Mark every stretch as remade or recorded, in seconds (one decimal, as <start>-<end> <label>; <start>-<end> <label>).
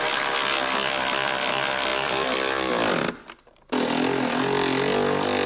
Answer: 0.0-5.5 recorded